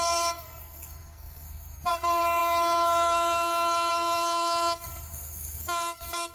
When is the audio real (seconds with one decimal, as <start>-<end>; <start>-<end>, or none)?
none